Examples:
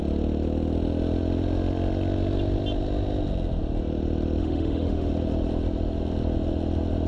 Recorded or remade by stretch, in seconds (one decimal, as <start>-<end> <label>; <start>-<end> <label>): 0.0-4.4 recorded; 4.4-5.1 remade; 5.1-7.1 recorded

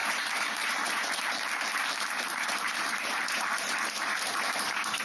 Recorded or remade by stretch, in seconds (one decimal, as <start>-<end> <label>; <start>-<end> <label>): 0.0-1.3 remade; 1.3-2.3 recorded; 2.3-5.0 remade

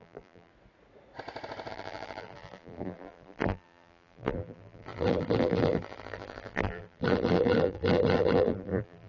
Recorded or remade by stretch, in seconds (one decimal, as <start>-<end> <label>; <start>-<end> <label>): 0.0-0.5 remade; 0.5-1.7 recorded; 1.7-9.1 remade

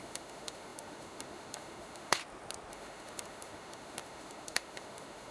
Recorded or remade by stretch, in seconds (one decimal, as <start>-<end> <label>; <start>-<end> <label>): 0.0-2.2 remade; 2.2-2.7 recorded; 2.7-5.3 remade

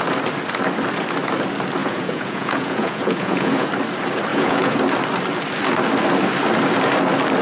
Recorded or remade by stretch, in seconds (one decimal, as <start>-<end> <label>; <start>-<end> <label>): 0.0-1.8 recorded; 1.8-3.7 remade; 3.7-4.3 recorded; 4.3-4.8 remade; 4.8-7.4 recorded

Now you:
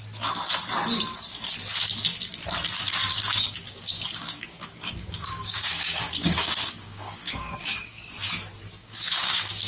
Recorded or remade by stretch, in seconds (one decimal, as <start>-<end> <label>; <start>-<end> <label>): 0.0-3.1 recorded; 3.1-8.3 remade; 8.3-8.8 recorded; 8.8-9.7 remade

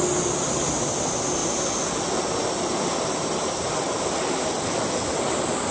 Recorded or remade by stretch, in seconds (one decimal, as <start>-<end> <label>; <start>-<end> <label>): 0.0-5.7 recorded

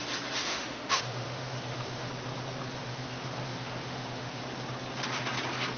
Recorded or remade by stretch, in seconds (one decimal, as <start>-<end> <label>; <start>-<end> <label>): 0.0-0.4 recorded; 0.4-2.1 remade; 2.1-2.8 recorded; 2.8-4.4 remade; 4.4-5.8 recorded